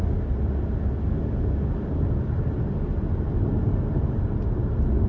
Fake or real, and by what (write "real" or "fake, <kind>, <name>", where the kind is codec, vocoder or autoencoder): real